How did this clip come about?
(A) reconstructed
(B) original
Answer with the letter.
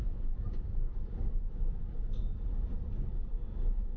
A